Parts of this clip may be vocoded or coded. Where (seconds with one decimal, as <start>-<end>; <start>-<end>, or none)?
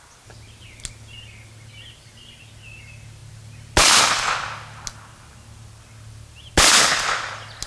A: none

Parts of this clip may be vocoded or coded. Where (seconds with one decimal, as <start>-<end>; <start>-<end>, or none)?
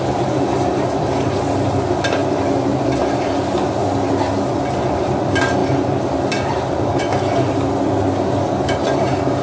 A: 0.0-3.8; 4.5-7.1; 8.1-9.4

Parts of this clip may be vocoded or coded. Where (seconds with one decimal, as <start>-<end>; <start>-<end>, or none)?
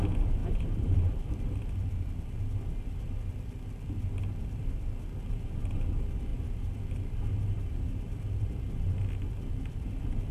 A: 0.4-1.1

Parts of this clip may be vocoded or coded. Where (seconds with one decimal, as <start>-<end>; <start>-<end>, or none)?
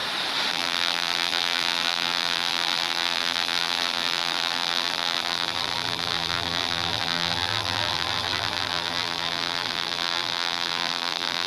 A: 0.5-11.5